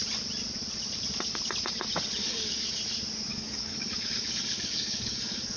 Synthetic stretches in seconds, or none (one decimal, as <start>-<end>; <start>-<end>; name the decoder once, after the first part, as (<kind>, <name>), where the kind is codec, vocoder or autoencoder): 2.2-2.7 (codec, DAC); 3.3-5.6